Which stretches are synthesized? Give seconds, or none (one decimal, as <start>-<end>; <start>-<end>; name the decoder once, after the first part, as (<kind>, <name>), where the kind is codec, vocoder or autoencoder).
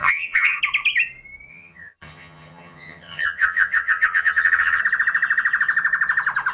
0.0-0.6 (vocoder, HiFi-GAN); 1.5-4.8